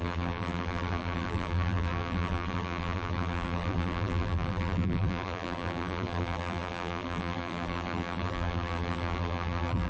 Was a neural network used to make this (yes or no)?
yes